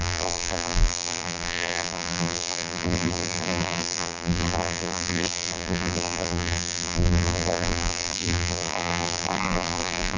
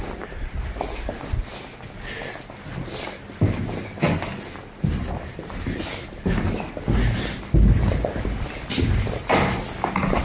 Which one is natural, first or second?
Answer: second